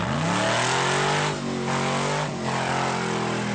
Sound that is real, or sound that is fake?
real